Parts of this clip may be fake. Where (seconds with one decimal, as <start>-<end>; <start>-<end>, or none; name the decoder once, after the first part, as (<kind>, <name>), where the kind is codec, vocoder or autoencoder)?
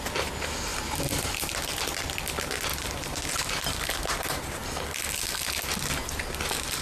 0.7-1.3 (vocoder, BigVGAN v2); 2.7-3.8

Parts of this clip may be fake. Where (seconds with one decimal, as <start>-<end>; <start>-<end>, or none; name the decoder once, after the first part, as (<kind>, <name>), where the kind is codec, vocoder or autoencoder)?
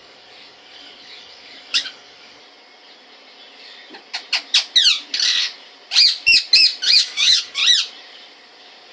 0.0-2.4 (codec, DAC); 6.9-7.6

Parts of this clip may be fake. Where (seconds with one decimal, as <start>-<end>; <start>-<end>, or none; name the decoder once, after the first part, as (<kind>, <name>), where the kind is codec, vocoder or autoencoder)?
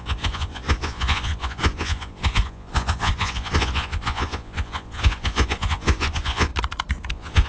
0.0-6.5 (vocoder, Vocos); 7.1-7.5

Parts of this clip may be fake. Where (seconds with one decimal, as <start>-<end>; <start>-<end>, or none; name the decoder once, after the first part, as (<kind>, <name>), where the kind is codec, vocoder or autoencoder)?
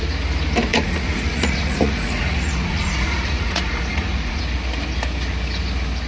0.7-4.4 (vocoder, Vocos)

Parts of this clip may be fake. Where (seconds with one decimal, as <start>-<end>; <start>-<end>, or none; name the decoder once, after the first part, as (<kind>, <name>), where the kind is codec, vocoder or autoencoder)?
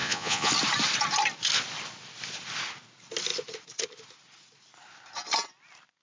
0.0-0.5 (vocoder, Vocos)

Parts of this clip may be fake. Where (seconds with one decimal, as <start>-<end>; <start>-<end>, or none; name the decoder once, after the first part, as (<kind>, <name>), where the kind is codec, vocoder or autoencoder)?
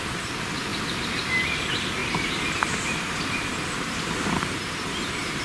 2.0-5.4 (vocoder, BigVGAN v2)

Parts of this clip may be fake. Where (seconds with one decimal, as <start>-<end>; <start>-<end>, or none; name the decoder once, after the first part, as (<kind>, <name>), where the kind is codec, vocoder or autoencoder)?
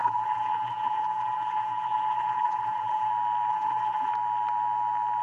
0.0-3.1 (vocoder, BigVGAN v2); 3.5-4.1